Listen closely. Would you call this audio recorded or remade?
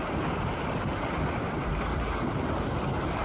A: recorded